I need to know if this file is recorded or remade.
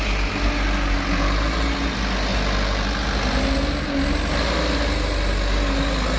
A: recorded